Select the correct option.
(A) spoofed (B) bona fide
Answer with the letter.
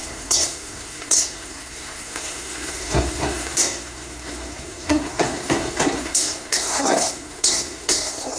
A